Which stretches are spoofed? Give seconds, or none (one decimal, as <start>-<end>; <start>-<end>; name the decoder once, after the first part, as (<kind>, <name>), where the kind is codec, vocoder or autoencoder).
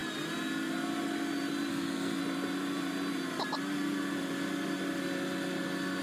1.7-2.2 (codec, SNAC)